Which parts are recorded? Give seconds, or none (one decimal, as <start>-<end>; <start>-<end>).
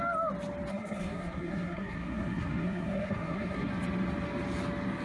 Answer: 0.0-0.7; 3.7-5.0